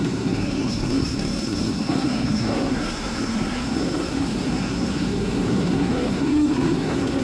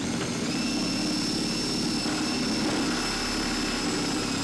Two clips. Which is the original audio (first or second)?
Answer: second